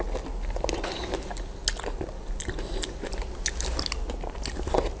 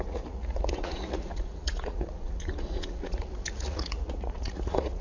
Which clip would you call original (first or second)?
first